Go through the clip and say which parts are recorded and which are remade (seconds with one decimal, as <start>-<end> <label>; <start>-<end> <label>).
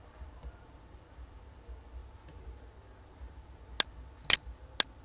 0.0-2.0 remade; 2.0-5.0 recorded